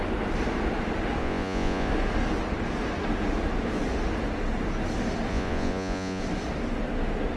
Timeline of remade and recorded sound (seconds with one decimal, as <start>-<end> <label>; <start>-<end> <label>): 0.0-1.2 recorded; 1.2-1.9 remade; 1.9-5.3 recorded; 5.3-6.2 remade; 6.2-7.4 recorded